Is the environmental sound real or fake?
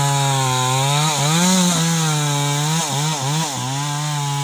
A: real